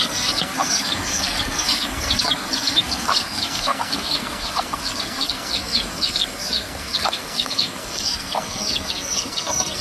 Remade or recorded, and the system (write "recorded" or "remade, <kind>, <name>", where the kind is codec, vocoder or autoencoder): remade, codec, SNAC